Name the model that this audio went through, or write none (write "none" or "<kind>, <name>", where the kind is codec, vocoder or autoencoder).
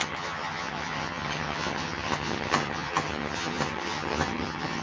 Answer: vocoder, HiFi-GAN